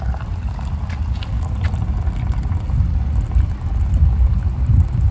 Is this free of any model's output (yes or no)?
yes